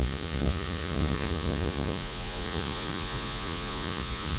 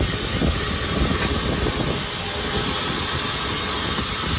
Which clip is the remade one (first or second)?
first